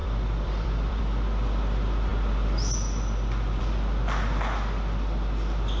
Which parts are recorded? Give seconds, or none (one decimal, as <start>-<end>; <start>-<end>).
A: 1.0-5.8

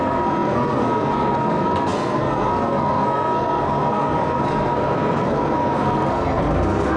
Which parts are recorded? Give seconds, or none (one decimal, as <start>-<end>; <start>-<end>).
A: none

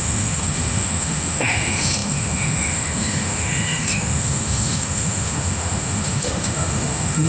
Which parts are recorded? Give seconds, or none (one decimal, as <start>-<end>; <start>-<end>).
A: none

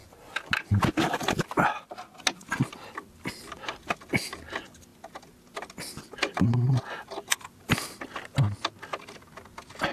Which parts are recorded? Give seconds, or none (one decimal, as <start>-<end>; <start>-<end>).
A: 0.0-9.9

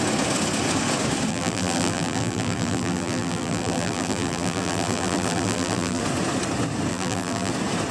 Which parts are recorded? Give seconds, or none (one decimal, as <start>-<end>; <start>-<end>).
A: 0.0-1.3; 6.0-6.9; 7.5-7.9

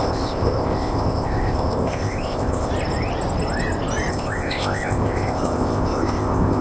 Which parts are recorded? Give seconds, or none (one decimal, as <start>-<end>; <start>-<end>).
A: 2.7-4.1

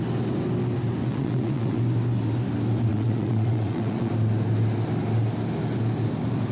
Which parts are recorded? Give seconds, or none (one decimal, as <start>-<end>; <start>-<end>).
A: 0.0-1.0; 1.8-2.9; 4.1-6.5